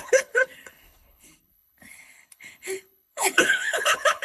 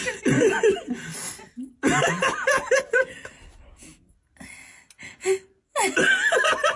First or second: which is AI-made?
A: first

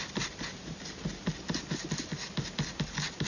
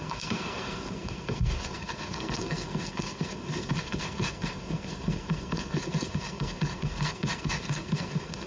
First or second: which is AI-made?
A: second